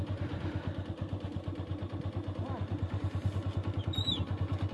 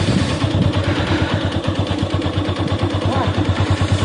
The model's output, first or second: second